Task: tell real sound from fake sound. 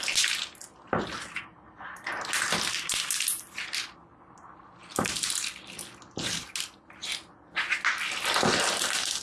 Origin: real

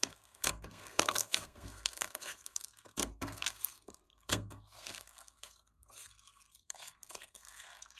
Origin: fake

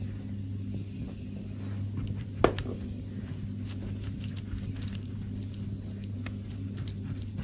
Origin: real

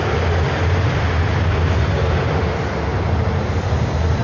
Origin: real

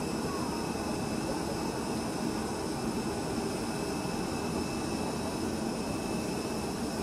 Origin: real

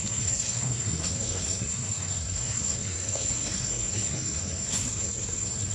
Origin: fake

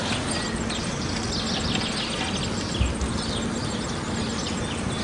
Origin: real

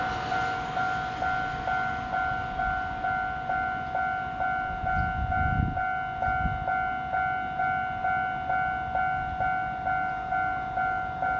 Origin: real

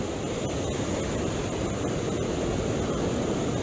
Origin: real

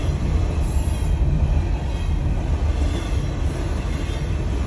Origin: real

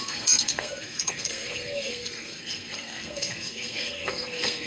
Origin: fake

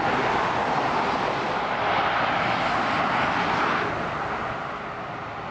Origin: real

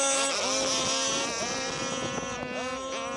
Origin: real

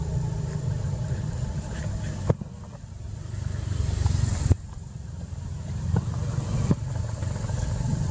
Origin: real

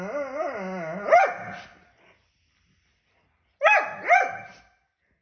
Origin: real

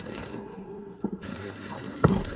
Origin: fake